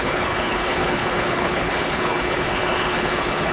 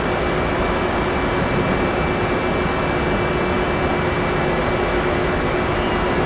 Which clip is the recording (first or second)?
second